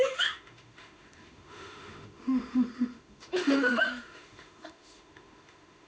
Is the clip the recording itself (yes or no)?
no